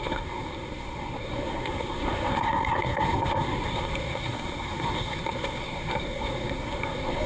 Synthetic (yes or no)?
yes